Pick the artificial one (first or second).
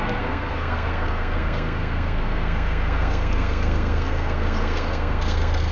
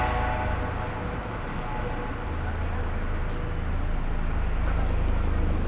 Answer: first